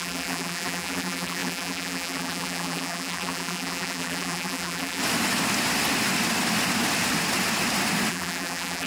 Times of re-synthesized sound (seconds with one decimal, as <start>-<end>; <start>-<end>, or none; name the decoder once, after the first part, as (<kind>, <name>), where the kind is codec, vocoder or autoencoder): 0.0-5.0 (vocoder, BigVGAN v2); 8.1-8.9